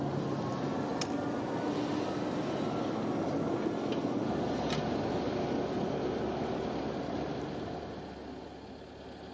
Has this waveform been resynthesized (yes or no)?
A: no